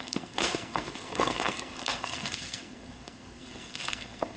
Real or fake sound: fake